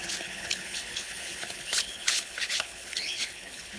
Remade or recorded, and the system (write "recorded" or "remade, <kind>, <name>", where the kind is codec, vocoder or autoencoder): remade, codec, HILCodec